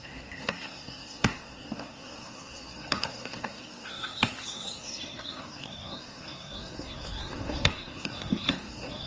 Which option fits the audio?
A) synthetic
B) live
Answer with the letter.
A